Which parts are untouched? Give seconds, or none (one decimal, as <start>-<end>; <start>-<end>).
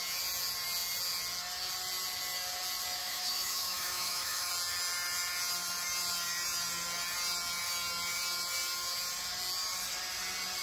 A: 0.0-3.0; 4.5-10.6